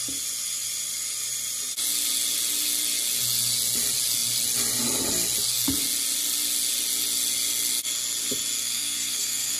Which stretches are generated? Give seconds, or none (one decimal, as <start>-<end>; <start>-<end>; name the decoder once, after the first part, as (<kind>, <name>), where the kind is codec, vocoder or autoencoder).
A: 8.6-9.6 (codec, SNAC)